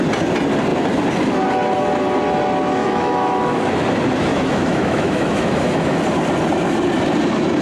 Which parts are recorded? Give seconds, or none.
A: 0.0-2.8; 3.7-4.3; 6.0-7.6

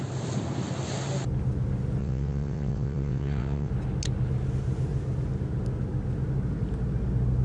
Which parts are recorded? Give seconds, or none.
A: 0.0-2.0; 3.7-7.4

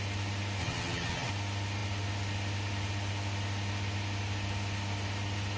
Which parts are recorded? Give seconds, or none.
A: 0.0-0.6; 1.3-5.6

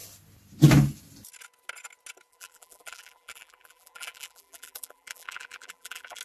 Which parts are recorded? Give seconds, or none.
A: 0.0-2.3

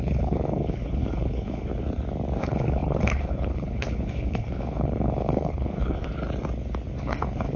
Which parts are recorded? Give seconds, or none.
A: 1.7-2.4; 6.1-7.0